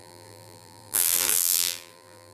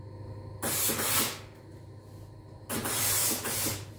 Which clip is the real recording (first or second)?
second